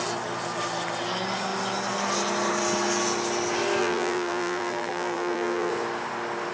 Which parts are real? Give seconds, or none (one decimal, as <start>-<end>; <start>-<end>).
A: 0.0-3.8; 5.7-6.5